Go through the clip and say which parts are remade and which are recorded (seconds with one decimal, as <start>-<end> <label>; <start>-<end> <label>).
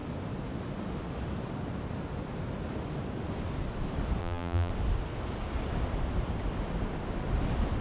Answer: 0.0-4.2 recorded; 4.2-4.7 remade; 4.7-7.8 recorded